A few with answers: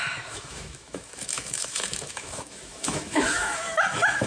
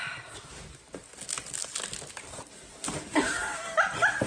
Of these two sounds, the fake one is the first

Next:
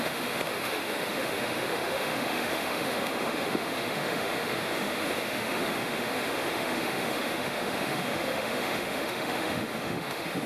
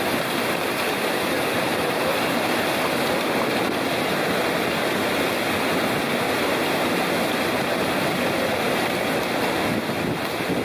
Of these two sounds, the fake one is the first